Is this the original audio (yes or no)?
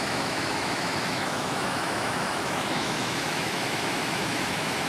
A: no